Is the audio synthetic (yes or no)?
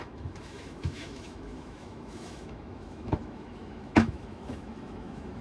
yes